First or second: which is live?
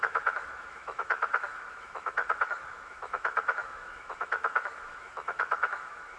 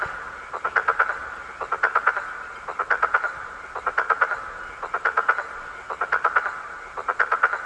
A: second